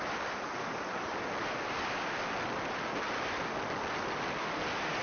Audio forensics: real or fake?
real